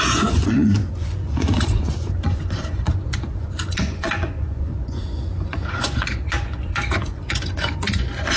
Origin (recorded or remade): remade